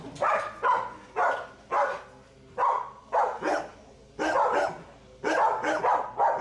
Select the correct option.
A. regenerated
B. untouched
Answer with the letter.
B